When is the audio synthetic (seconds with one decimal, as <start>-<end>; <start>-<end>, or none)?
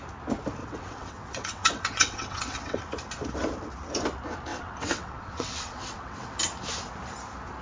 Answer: 0.6-2.8; 4.5-6.4